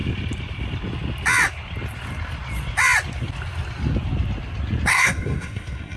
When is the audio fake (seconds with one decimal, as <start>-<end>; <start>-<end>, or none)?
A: 4.9-6.0